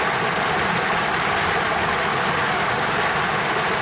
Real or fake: real